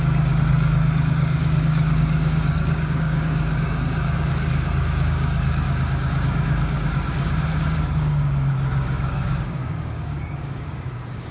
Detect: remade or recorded remade